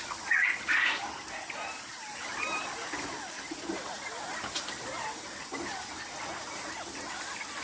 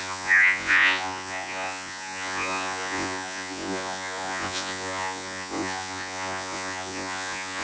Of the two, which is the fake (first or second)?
second